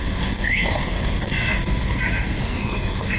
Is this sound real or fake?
fake